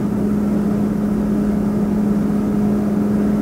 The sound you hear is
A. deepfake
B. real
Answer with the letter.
A